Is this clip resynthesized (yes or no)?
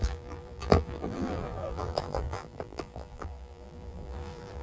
yes